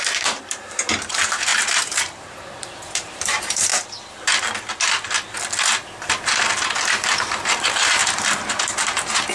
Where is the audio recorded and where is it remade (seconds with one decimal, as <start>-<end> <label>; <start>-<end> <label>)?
0.0-1.5 remade; 1.5-2.2 recorded; 2.2-3.7 remade; 3.7-6.2 recorded; 6.2-8.0 remade; 8.0-8.5 recorded; 8.5-9.3 remade

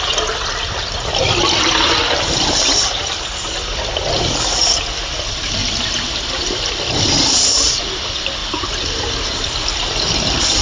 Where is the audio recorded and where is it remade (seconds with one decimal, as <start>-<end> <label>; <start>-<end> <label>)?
0.0-5.6 remade; 5.6-7.8 recorded; 7.8-10.6 remade

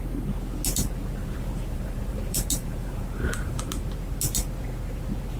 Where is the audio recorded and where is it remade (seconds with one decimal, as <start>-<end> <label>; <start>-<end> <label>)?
0.0-1.2 recorded; 1.2-3.7 remade; 3.7-5.4 recorded

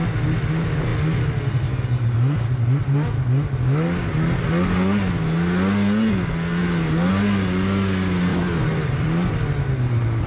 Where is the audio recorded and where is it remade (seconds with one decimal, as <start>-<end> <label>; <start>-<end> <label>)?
0.0-8.3 recorded; 8.3-9.3 remade; 9.3-10.3 recorded

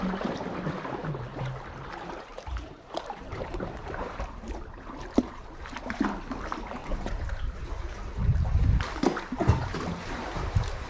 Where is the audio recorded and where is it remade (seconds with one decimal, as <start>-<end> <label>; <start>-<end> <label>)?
0.0-2.3 recorded; 2.3-5.7 remade; 5.7-6.8 recorded; 6.8-7.6 remade; 7.6-9.6 recorded; 9.6-10.9 remade

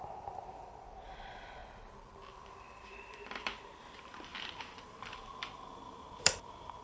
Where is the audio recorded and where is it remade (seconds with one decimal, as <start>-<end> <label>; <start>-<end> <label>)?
0.0-1.6 remade; 1.6-2.3 recorded; 2.3-6.8 remade

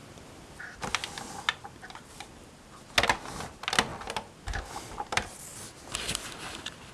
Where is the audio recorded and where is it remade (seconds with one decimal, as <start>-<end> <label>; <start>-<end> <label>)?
0.0-6.9 recorded

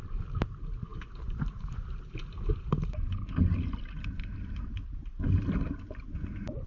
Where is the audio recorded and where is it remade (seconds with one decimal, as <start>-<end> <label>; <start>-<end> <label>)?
0.0-6.7 recorded